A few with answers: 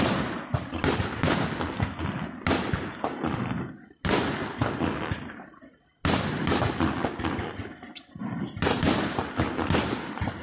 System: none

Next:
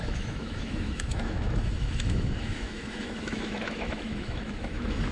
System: autoencoder, DAC-VAE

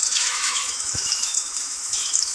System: autoencoder, DAC-VAE